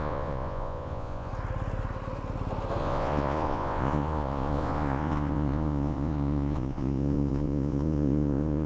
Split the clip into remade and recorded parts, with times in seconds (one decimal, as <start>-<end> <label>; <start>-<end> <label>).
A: 0.0-1.3 remade; 1.3-2.8 recorded; 2.8-8.7 remade